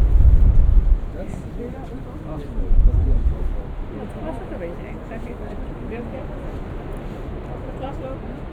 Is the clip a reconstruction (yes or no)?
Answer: no